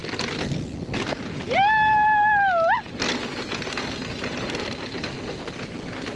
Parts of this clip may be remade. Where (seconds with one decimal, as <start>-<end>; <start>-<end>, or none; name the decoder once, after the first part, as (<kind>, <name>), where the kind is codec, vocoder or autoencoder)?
none